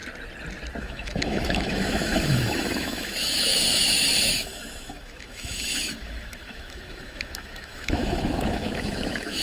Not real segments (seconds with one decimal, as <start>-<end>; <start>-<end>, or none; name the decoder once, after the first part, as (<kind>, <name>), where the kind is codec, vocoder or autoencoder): 0.8-9.4 (autoencoder, DAC-VAE)